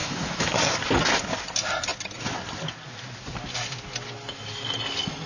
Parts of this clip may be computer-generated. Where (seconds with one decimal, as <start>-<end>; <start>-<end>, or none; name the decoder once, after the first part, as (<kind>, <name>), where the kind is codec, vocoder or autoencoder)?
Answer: 0.0-0.6 (autoencoder, DAC-VAE)